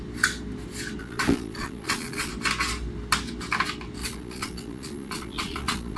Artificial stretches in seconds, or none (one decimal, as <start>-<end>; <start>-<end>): 1.0-2.3; 4.0-6.0